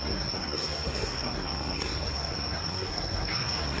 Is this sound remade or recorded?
remade